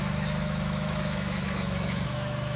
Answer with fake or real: fake